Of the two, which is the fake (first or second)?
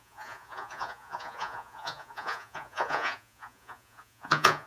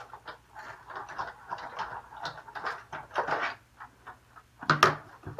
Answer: first